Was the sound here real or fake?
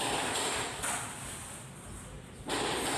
fake